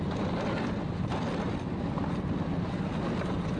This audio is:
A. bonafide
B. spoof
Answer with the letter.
A